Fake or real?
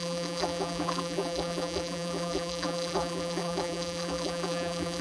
fake